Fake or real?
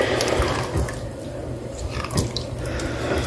fake